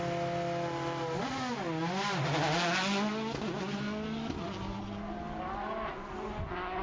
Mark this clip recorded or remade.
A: recorded